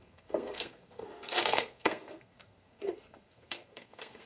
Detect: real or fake fake